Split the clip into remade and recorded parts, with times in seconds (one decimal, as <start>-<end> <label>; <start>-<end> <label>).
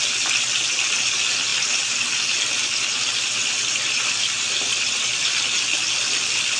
0.0-3.4 recorded; 3.4-5.3 remade; 5.3-6.6 recorded